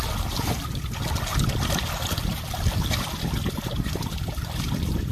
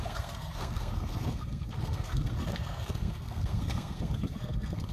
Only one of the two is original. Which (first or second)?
first